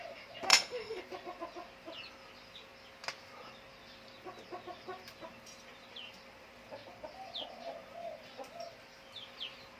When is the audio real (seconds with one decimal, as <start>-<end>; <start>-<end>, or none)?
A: 0.0-0.5; 1.0-9.8